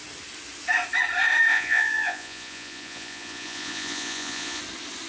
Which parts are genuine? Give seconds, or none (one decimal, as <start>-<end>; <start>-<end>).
0.0-1.5; 4.6-5.1